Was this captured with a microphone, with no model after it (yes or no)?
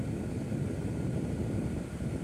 yes